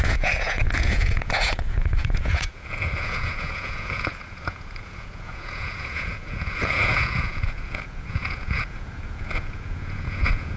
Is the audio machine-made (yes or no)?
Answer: yes